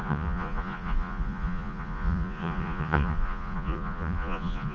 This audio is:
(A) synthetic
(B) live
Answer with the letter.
A